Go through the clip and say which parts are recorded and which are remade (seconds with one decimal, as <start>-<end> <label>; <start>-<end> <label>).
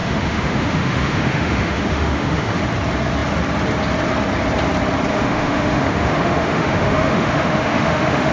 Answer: 0.0-2.6 remade; 2.6-5.1 recorded; 5.1-8.3 remade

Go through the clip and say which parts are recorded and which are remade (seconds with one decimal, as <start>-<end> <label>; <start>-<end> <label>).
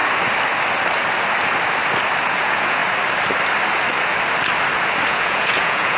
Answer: 0.0-2.2 recorded; 2.2-2.8 remade; 2.8-5.1 recorded; 5.1-6.0 remade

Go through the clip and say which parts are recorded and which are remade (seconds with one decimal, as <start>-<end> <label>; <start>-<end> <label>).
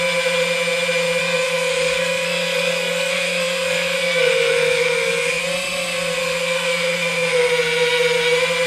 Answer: 0.0-1.2 recorded; 1.2-5.4 remade; 5.4-6.2 recorded; 6.2-7.5 remade; 7.5-8.7 recorded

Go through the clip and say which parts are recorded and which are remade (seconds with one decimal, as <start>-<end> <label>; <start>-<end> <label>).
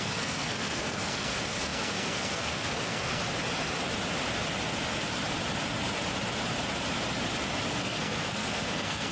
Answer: 0.0-3.2 remade; 3.2-7.8 recorded; 7.8-9.1 remade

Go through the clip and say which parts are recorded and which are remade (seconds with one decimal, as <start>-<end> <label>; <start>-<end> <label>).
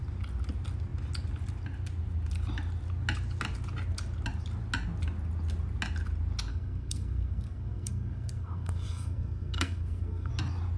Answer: 0.0-6.5 recorded; 6.5-10.3 remade; 10.3-10.8 recorded